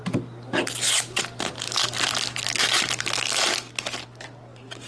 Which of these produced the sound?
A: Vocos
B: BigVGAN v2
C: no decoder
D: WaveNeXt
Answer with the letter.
C